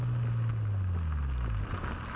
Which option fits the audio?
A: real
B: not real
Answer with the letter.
A